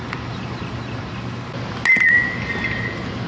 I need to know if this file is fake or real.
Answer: real